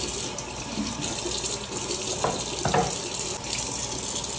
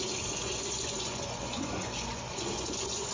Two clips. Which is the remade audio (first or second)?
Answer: second